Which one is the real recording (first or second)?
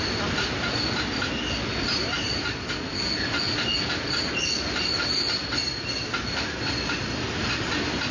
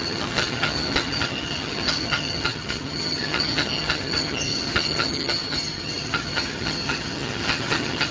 first